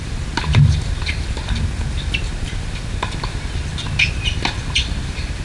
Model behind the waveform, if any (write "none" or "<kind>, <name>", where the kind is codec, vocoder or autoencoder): none